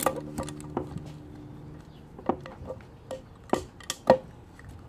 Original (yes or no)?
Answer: yes